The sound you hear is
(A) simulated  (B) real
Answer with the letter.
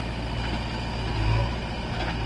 B